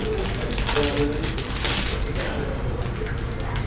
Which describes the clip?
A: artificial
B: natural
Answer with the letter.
B